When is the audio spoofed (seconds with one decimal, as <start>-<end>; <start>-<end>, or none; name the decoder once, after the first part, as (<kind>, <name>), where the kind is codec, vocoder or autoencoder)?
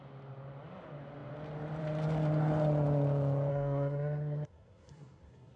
3.5-5.6 (codec, SNAC)